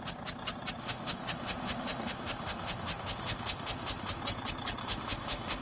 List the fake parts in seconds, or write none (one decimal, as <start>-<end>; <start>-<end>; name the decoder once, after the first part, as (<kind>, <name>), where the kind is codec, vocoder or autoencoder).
0.8-4.2 (autoencoder, DAC-VAE); 4.8-5.6